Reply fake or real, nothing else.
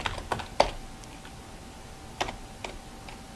real